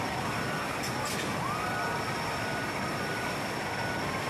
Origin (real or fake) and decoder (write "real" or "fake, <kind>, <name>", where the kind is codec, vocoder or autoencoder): real